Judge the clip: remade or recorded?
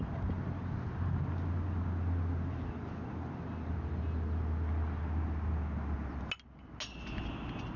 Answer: recorded